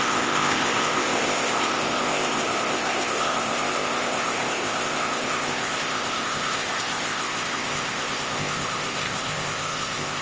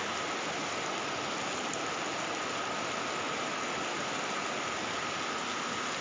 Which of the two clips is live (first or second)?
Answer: second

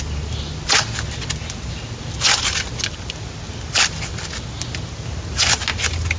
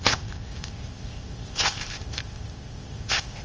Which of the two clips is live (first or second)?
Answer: first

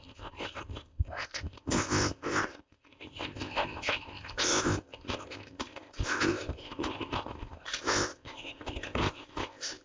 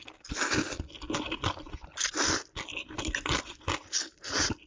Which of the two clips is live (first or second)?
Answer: second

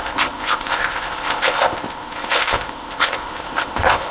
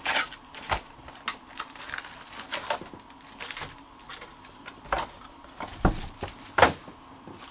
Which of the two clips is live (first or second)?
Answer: second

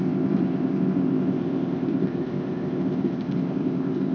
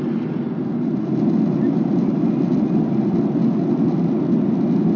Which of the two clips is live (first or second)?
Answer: second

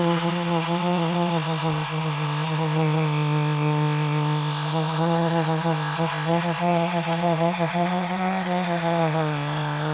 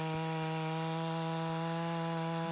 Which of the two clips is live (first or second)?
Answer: second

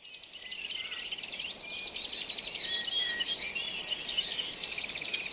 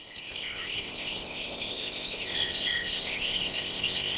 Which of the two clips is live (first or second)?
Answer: first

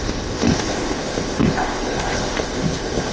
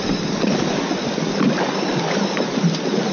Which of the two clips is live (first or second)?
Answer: second